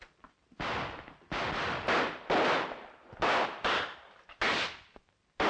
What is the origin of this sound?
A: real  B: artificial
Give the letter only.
B